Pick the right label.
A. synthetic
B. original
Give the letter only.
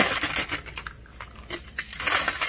B